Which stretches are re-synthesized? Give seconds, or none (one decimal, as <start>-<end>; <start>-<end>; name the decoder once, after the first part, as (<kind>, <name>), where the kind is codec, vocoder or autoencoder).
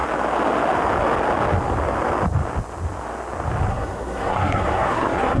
3.7-5.4 (codec, SNAC)